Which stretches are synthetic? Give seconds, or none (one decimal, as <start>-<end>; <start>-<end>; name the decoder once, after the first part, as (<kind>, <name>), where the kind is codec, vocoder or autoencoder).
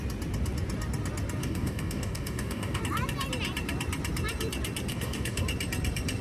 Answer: 1.4-2.8 (codec, DAC); 4.9-5.4